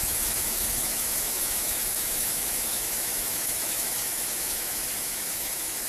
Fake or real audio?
fake